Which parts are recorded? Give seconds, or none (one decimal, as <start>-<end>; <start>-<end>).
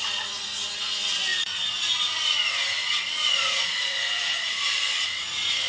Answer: none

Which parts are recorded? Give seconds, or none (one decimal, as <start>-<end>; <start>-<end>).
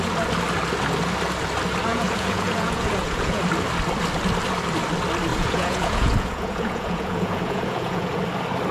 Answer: 0.0-1.9; 3.4-5.3; 8.2-8.7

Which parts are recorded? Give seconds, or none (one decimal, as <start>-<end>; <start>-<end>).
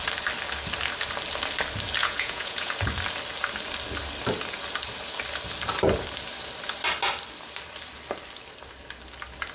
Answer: 0.0-2.0; 2.7-9.5